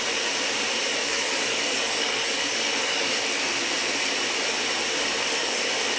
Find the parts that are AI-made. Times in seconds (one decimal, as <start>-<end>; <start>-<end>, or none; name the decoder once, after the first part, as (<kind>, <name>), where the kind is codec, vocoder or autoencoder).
0.9-3.4 (codec, DAC); 5.1-5.6